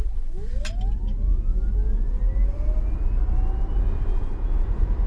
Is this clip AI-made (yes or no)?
no